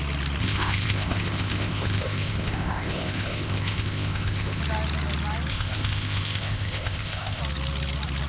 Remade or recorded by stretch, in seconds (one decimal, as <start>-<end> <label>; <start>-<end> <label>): 0.0-0.4 recorded; 0.4-4.6 remade; 4.6-5.5 recorded; 5.5-7.4 remade; 7.4-8.3 recorded